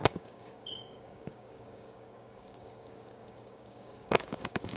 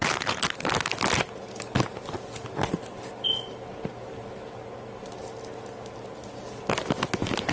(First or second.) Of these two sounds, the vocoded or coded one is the first